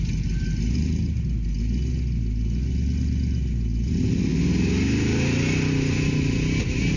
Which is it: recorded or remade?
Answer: recorded